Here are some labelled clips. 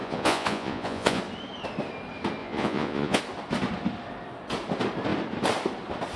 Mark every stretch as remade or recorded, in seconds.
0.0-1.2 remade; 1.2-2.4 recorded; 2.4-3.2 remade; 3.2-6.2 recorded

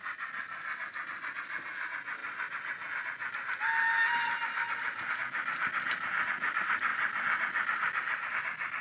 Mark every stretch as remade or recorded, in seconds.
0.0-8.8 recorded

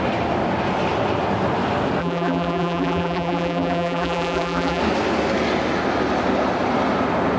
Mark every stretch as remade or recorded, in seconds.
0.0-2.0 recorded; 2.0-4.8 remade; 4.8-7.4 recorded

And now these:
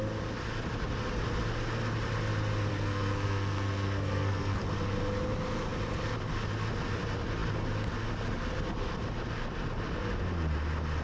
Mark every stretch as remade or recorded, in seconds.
0.0-2.7 recorded; 2.7-4.6 remade; 4.6-11.0 recorded